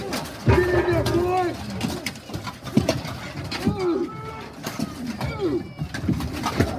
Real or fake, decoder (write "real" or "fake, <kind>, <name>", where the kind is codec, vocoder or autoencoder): real